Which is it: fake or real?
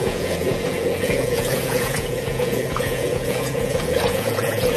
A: fake